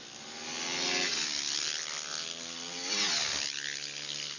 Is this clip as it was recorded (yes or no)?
yes